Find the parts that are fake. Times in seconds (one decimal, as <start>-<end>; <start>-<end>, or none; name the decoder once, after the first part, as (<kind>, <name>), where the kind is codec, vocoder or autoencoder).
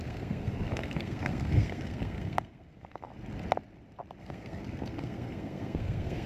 0.0-3.1 (codec, SNAC); 4.2-6.3